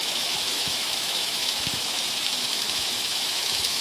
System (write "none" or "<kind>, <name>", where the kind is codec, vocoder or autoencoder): autoencoder, DAC-VAE